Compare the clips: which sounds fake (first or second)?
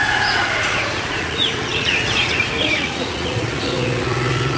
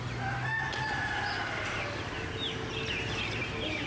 first